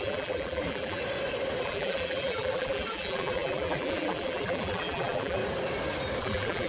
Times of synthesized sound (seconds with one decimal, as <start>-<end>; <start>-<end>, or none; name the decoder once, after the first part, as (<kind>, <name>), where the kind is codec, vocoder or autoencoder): 0.0-1.0 (vocoder, BigVGAN v2); 1.6-5.4; 6.2-6.7